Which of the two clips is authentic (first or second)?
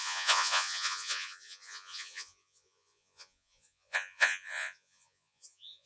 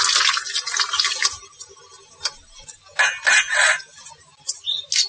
second